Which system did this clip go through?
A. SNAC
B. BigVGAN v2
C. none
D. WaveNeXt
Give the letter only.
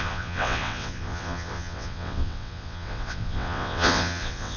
D